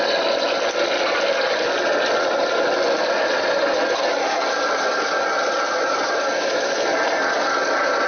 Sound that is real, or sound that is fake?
real